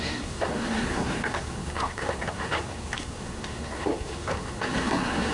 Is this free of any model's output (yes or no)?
no